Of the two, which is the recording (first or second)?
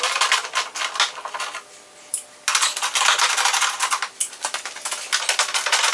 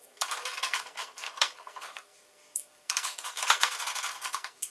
first